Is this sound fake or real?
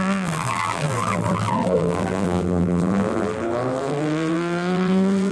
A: fake